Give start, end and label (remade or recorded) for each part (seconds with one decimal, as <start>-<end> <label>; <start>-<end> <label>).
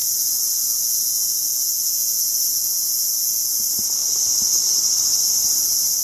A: 0.0-3.6 remade; 3.6-6.0 recorded